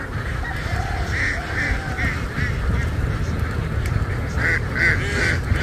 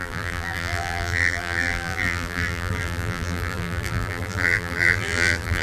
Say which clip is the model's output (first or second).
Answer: second